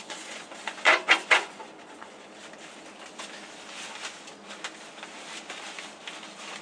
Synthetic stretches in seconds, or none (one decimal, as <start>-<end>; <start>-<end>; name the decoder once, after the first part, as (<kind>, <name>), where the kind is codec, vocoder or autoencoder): 0.0-2.4 (vocoder, Vocos)

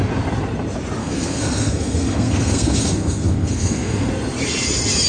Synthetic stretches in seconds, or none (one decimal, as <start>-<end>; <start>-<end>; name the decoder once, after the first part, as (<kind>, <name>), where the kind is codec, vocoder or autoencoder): 1.0-4.1 (codec, SNAC)

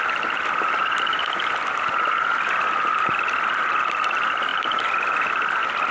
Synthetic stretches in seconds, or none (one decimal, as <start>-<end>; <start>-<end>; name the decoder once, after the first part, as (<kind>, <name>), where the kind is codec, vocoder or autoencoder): none

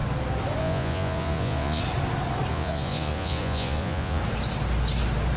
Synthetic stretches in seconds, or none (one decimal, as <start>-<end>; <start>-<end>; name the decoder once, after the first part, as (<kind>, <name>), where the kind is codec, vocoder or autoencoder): 0.6-1.8 (vocoder, Vocos); 2.5-4.2

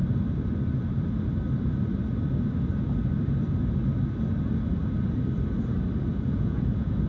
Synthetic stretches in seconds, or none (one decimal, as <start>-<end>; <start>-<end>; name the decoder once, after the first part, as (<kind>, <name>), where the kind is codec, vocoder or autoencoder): 6.1-7.1 (vocoder, Vocos)

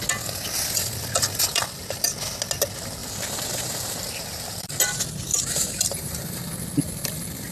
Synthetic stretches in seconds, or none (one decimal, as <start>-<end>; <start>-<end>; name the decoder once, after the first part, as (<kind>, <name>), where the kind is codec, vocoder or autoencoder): 3.0-4.7 (vocoder, BigVGAN v2); 5.3-6.4